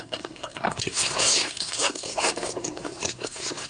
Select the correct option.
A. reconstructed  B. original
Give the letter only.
A